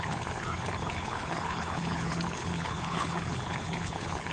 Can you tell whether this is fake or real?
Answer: fake